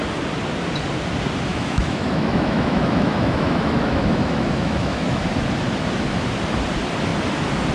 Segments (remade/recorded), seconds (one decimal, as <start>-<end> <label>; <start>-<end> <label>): 0.0-1.5 recorded; 1.5-5.2 remade; 5.2-7.7 recorded